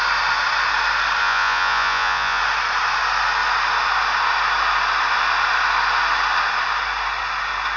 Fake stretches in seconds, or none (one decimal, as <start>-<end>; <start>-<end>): 1.2-2.4